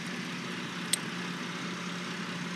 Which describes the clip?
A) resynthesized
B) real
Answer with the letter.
B